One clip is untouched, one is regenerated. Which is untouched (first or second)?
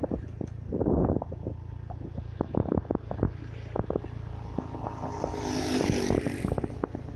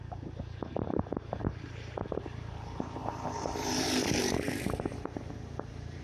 first